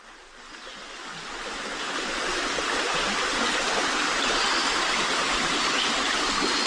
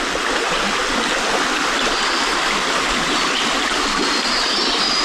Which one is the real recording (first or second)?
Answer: second